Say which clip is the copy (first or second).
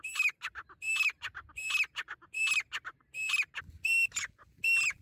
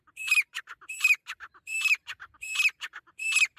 second